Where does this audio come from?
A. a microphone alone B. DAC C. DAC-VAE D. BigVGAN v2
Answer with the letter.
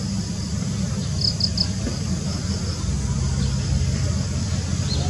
A